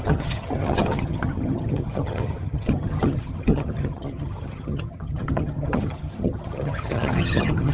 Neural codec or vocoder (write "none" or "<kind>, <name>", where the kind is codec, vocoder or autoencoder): vocoder, HiFi-GAN